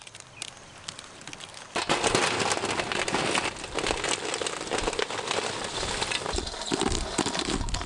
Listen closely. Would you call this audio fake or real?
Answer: real